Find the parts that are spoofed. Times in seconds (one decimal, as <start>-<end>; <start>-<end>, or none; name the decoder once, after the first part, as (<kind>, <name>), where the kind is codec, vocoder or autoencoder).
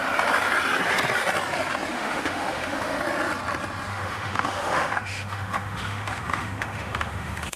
1.9-3.0 (autoencoder, DAC-VAE); 3.9-7.6